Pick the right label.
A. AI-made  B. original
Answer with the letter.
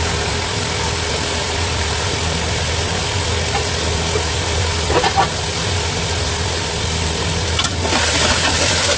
A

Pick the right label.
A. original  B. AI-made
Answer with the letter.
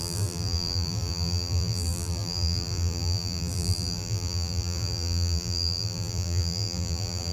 B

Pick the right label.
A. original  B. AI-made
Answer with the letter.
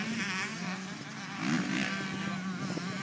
A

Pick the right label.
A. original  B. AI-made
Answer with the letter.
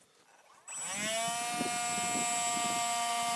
A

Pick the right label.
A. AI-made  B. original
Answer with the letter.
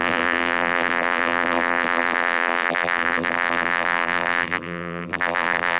A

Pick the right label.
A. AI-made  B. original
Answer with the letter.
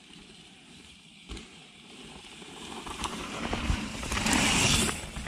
A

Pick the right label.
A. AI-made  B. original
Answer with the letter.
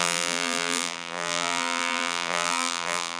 A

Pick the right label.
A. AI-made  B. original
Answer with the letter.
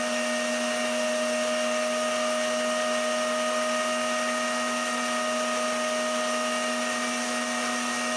B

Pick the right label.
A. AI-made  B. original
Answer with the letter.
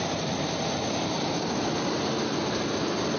A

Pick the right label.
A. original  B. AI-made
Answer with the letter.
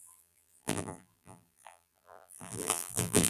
B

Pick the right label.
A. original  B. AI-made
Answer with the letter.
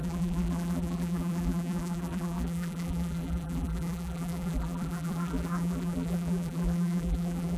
B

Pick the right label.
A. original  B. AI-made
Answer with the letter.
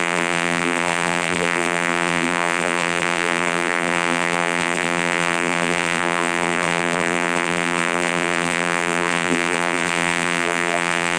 B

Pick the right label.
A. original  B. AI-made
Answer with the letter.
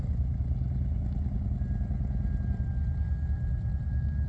A